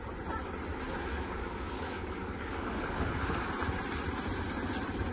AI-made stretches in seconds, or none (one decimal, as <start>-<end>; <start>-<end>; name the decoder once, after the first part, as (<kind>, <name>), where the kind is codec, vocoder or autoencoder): 1.1-3.5 (codec, DAC)